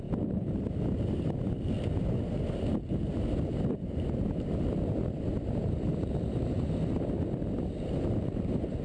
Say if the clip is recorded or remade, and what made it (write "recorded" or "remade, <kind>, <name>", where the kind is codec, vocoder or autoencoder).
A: recorded